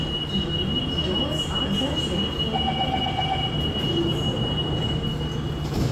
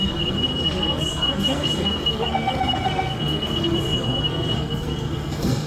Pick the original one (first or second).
first